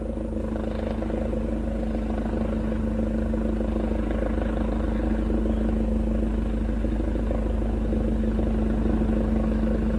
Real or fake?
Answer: real